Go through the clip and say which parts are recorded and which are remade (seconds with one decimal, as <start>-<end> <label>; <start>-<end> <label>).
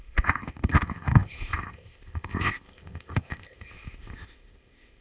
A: 0.0-5.0 remade